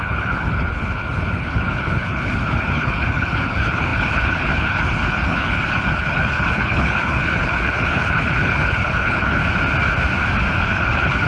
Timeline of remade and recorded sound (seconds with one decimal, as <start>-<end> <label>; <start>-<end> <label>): 0.0-9.4 remade; 9.4-10.5 recorded; 10.5-11.3 remade